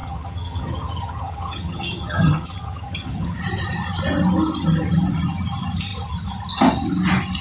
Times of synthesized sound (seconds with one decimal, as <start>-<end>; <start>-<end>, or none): 0.0-3.4